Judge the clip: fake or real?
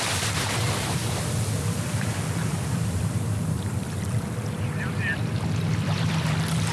fake